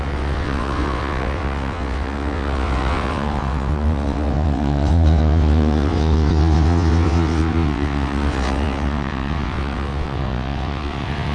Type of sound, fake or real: fake